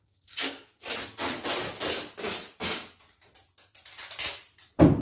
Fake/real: real